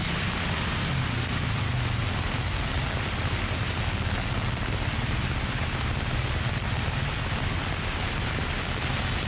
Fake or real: real